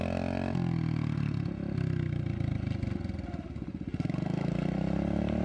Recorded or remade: recorded